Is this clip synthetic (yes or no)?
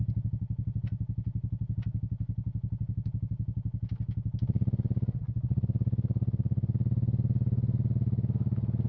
no